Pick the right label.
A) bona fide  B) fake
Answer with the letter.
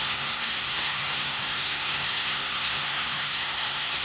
B